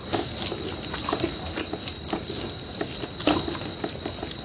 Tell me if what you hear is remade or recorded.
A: recorded